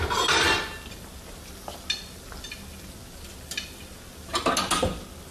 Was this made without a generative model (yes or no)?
yes